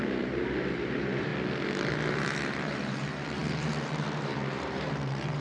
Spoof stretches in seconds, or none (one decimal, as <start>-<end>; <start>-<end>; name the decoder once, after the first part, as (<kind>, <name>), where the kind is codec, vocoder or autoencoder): 0.0-1.3 (vocoder, BigVGAN v2); 2.1-5.4